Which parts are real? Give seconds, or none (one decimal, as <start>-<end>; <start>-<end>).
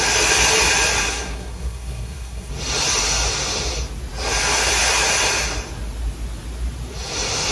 0.0-1.1; 2.5-7.5